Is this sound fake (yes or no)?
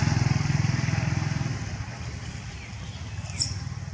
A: no